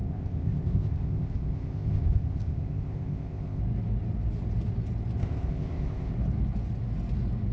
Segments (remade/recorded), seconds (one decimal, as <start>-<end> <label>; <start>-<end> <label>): 0.0-3.6 remade; 3.6-5.2 recorded; 5.2-6.1 remade; 6.1-7.5 recorded